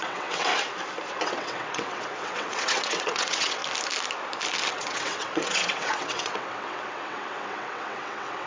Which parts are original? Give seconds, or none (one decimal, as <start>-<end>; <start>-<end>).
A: 0.5-1.1; 3.6-4.7